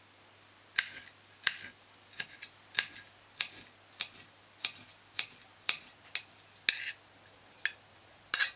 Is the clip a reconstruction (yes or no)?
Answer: no